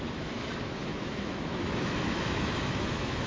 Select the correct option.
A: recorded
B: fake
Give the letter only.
B